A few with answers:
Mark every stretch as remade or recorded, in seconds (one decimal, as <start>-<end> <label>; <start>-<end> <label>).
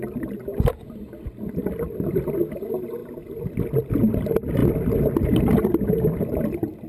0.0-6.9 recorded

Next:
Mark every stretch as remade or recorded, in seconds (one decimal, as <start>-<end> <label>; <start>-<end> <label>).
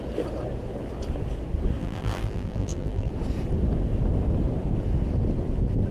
0.0-1.8 recorded; 1.8-3.1 remade; 3.1-5.9 recorded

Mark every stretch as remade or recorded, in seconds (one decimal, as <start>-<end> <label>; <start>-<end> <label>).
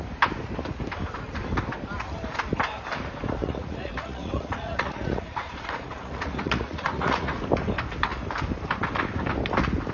0.0-3.4 recorded; 3.4-7.4 remade; 7.4-9.9 recorded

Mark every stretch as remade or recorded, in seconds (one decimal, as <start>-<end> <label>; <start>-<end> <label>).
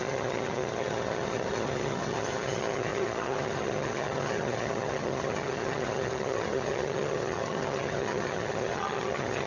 0.0-9.5 remade